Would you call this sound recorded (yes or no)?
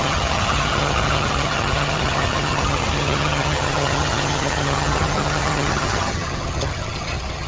no